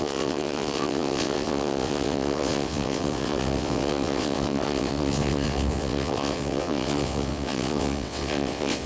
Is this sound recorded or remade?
remade